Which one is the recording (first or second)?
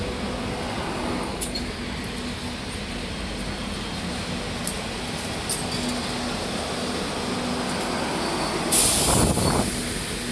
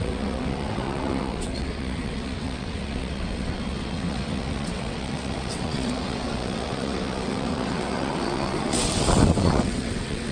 first